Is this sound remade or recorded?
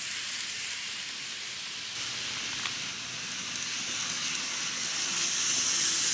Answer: recorded